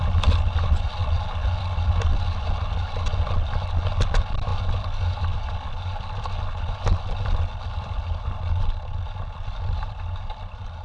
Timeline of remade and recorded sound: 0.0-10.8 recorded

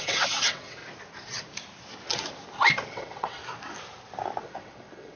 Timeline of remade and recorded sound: 0.0-0.8 remade; 0.8-2.9 recorded; 2.9-3.4 remade; 3.4-4.4 recorded; 4.4-5.2 remade